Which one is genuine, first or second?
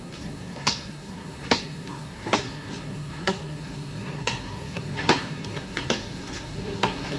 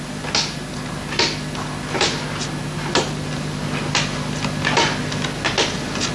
second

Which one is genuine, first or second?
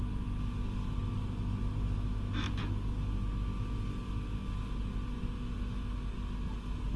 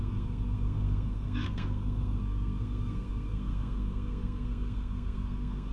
first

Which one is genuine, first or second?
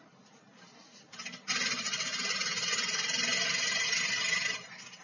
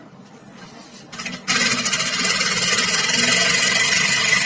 second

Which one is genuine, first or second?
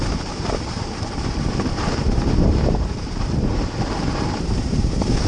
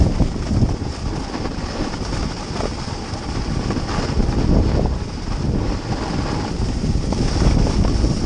second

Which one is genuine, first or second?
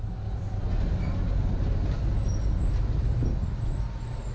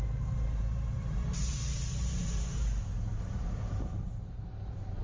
first